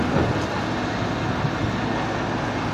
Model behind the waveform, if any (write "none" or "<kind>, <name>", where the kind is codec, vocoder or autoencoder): none